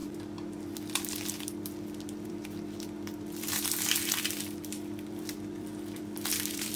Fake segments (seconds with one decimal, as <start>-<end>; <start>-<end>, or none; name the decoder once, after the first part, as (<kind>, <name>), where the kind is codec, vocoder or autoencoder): 0.0-6.8 (vocoder, BigVGAN v2)